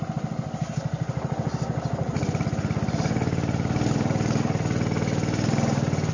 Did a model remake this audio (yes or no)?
no